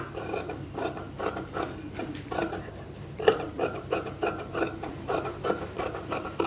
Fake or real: fake